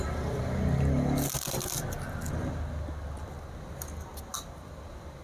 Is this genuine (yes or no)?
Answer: yes